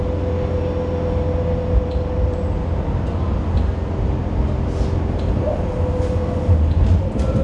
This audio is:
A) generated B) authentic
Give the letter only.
B